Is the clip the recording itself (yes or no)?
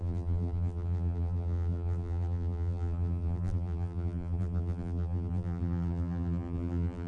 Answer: no